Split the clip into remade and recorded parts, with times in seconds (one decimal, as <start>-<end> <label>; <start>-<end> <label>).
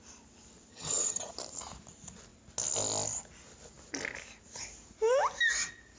0.0-0.7 recorded; 0.7-1.3 remade; 1.3-6.0 recorded